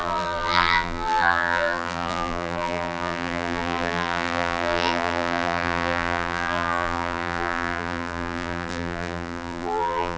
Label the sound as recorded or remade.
remade